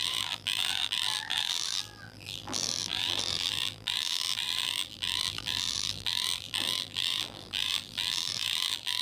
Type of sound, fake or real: fake